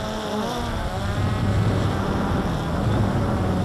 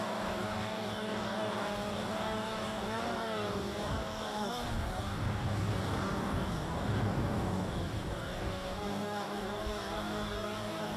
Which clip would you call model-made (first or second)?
second